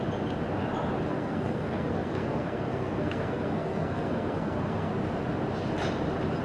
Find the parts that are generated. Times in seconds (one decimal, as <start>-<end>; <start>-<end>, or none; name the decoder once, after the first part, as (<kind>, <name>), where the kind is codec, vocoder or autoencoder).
1.1-4.9 (codec, SNAC)